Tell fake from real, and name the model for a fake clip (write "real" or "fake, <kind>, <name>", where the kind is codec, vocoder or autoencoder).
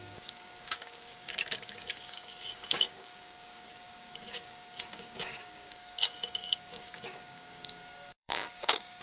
fake, codec, DAC